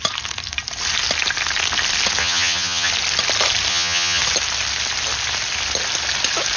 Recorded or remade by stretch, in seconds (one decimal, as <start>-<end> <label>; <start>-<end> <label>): 0.0-2.2 recorded; 2.2-2.9 remade; 2.9-3.7 recorded; 3.7-4.2 remade; 4.2-6.6 recorded